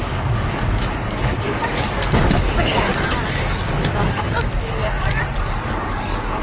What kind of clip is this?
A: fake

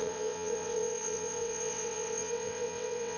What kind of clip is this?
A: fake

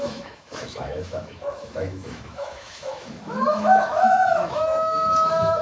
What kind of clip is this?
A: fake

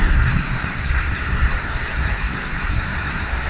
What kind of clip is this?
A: fake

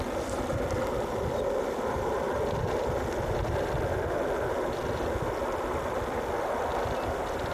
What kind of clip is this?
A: real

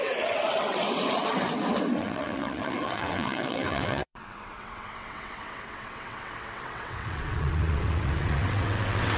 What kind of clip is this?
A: fake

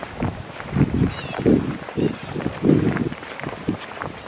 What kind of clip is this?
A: real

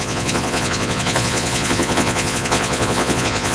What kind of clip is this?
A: fake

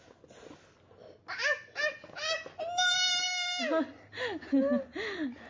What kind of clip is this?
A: real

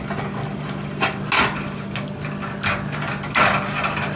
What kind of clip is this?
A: real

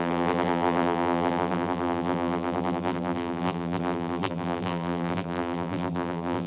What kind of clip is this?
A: fake